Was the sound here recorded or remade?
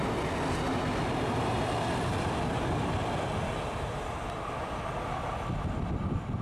recorded